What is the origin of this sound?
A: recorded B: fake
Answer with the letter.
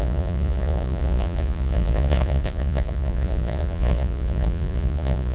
B